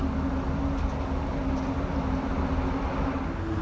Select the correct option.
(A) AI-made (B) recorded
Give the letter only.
B